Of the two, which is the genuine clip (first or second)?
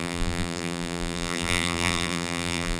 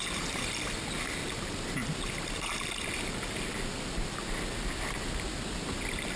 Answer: second